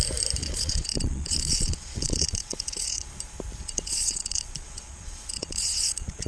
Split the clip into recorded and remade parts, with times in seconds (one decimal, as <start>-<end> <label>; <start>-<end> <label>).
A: 0.0-0.4 recorded; 0.4-3.1 remade; 3.1-3.6 recorded; 3.6-6.3 remade